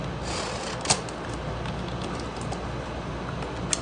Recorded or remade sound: recorded